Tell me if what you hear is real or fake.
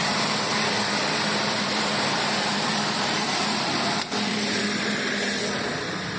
fake